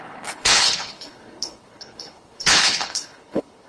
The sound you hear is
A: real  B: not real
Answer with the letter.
B